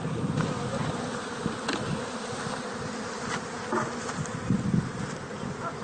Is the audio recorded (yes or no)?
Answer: yes